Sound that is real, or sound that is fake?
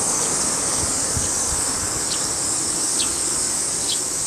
fake